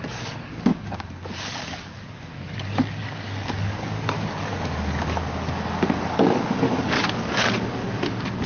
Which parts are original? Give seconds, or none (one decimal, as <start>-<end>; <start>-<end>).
none